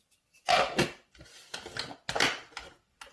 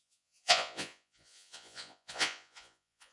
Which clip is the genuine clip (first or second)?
first